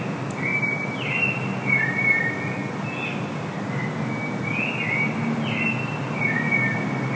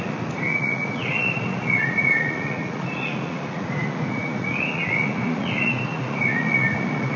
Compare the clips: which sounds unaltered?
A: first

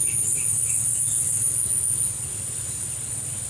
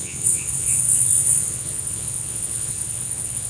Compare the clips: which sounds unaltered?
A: first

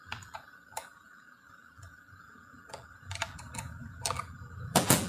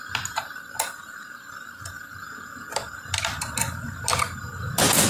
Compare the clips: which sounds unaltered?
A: second